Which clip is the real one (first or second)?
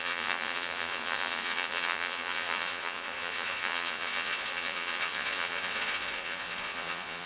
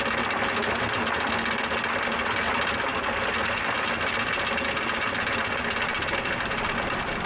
second